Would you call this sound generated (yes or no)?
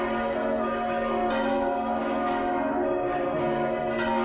no